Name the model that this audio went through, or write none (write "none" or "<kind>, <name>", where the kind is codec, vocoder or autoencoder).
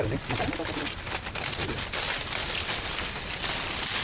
none